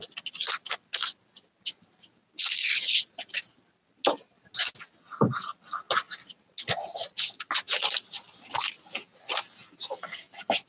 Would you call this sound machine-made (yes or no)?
no